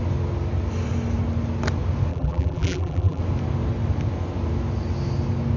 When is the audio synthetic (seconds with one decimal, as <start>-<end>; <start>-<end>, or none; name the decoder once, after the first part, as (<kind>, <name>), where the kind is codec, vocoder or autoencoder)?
2.1-3.2 (vocoder, BigVGAN v2)